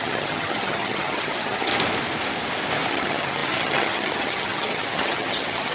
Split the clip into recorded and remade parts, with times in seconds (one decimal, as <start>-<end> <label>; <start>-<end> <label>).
0.0-1.7 remade; 1.7-2.9 recorded; 2.9-5.7 remade